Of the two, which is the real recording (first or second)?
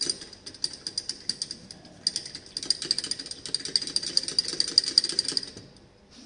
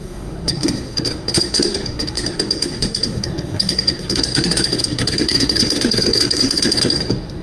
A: first